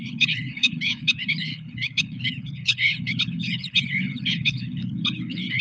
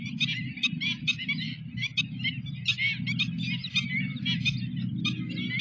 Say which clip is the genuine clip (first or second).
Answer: second